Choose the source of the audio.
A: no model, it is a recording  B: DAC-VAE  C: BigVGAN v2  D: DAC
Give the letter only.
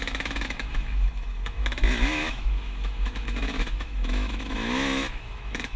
B